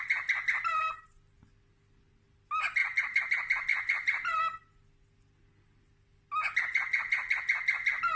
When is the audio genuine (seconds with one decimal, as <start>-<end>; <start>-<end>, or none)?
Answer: 0.0-2.8; 3.3-3.7; 4.4-8.2